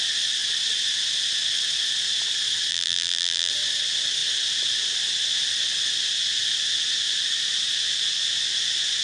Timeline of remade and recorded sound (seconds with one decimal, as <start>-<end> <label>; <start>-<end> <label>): 0.0-2.7 recorded; 2.7-3.5 remade; 3.5-9.0 recorded